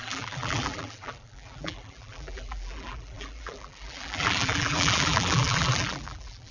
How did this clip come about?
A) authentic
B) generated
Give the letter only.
B